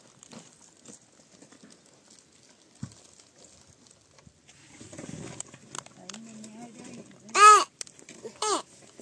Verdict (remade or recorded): recorded